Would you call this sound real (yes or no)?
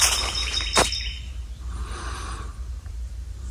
no